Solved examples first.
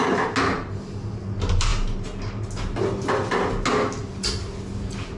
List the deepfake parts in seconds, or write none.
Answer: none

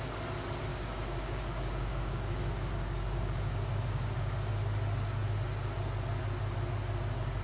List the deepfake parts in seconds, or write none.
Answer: 0.7-4.5 (codec, DAC)

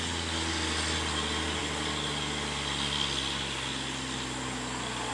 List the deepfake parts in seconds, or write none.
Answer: none

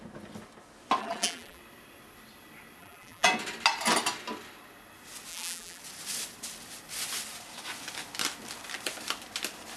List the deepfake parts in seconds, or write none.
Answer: 1.0-1.6 (vocoder, BigVGAN v2); 2.8-3.3; 5.3-5.8

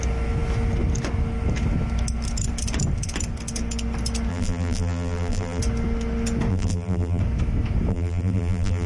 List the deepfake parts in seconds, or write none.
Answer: 4.3-5.6 (vocoder, BigVGAN v2); 6.5-7.2; 7.9-8.9

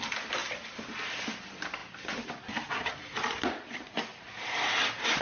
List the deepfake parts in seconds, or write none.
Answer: none